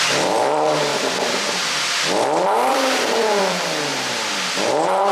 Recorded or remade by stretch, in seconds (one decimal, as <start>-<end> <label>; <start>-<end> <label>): 0.0-0.9 remade; 0.9-2.7 recorded; 2.7-3.9 remade; 3.9-4.5 recorded; 4.5-5.1 remade